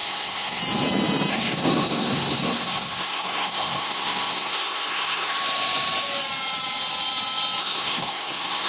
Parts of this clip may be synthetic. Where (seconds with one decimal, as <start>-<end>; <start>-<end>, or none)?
0.0-0.6; 1.3-5.3; 7.6-8.7